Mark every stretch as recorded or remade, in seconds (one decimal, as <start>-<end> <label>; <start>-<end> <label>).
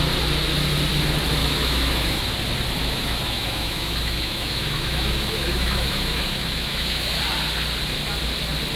0.0-1.4 recorded; 1.4-2.2 remade; 2.2-2.8 recorded; 2.8-7.2 remade; 7.2-8.8 recorded